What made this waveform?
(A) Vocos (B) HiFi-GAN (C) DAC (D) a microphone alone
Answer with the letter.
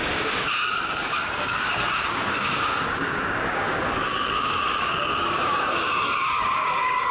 C